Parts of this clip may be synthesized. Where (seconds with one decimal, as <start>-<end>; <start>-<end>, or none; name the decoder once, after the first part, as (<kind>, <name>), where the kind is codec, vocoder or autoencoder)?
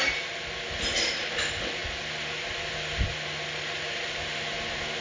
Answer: none